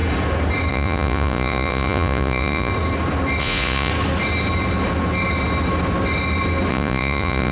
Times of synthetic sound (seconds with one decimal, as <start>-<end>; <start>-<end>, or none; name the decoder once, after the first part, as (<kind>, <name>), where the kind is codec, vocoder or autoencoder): 0.7-2.7 (vocoder, Vocos); 3.4-3.9; 6.7-7.5